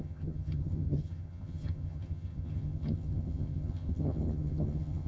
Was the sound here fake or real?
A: fake